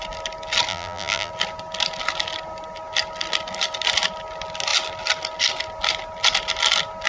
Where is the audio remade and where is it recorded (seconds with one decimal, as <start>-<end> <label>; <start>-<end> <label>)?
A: 0.0-0.7 recorded; 0.7-1.3 remade; 1.3-7.1 recorded